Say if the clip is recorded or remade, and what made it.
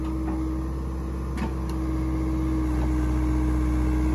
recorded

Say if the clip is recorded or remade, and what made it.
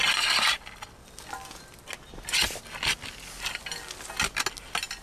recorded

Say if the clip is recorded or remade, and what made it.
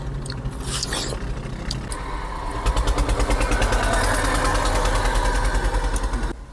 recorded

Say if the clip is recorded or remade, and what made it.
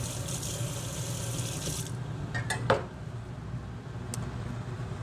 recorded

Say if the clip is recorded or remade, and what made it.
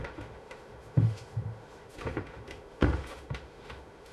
remade, autoencoder, DAC-VAE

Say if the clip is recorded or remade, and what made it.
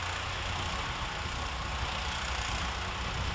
recorded